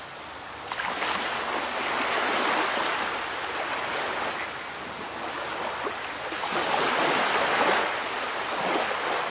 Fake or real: real